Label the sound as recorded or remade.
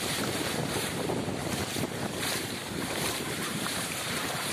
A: remade